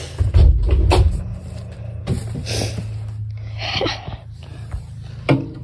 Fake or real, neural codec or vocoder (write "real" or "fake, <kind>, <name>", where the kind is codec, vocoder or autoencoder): real